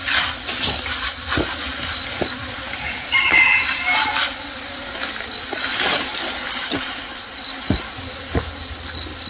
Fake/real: real